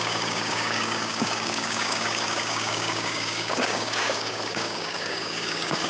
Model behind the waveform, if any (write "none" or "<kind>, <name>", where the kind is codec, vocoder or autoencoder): codec, DAC